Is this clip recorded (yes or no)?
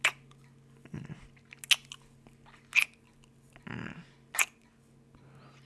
yes